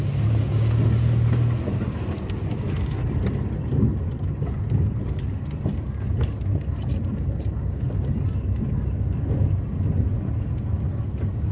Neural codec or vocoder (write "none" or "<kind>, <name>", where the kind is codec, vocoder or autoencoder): none